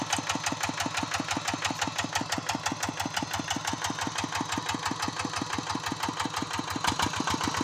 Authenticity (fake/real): real